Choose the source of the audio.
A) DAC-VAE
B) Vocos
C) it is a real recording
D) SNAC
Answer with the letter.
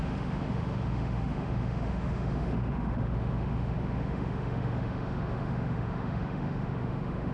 A